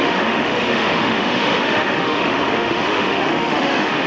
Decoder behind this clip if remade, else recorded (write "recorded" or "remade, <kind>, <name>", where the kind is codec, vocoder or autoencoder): remade, autoencoder, DAC-VAE